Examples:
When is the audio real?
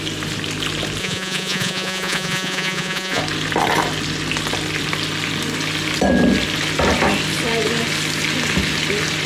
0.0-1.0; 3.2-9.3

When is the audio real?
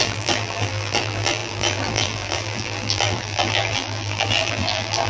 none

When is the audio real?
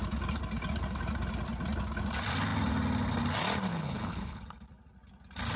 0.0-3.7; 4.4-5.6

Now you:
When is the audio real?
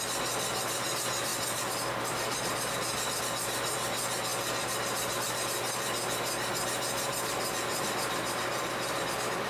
0.0-1.3; 3.2-9.5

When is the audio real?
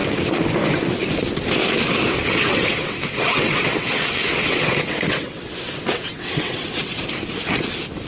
0.0-2.5; 7.0-8.1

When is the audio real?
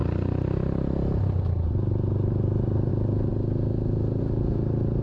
0.0-5.0